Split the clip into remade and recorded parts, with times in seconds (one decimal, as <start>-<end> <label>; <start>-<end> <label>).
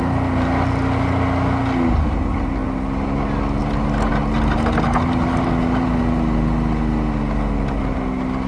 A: 0.0-8.5 recorded